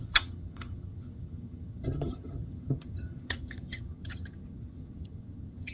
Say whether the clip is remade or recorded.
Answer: remade